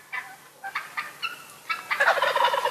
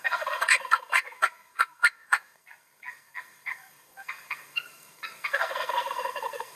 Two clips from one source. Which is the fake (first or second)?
second